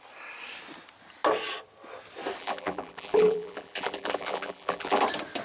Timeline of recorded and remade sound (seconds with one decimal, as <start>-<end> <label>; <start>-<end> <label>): 0.0-2.4 recorded; 2.4-5.0 remade; 5.0-5.4 recorded